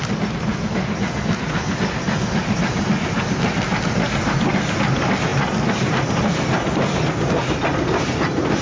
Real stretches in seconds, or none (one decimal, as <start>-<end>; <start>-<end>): 0.0-8.6